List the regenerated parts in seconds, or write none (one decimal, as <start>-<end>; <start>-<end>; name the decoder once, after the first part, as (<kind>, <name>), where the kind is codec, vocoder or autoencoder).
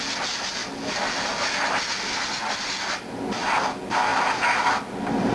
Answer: none